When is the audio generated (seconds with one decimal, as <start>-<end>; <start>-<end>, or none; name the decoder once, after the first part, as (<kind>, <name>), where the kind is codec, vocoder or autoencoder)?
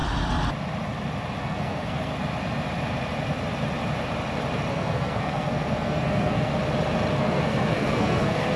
1.4-2.1 (codec, SNAC); 4.7-6.5; 7.1-8.6